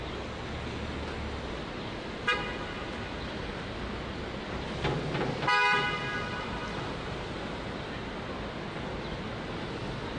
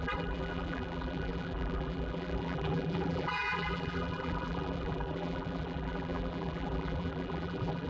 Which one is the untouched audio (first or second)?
first